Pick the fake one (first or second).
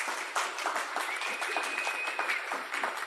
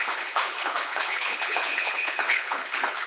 second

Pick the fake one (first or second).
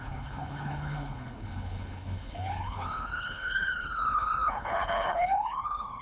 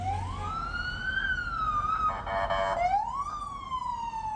first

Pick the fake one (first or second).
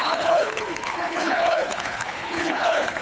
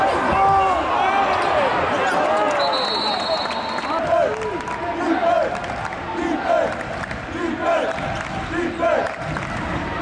first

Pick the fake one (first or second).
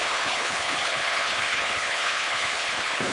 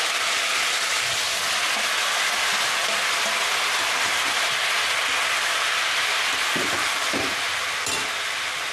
first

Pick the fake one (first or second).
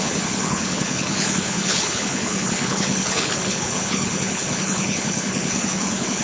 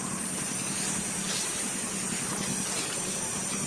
first